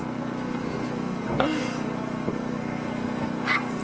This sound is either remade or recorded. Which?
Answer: remade